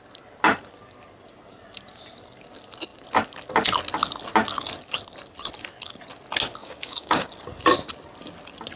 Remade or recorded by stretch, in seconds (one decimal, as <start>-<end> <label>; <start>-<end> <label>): 0.0-6.6 recorded; 6.6-7.3 remade; 7.3-8.8 recorded